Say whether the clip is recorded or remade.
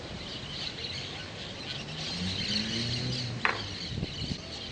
recorded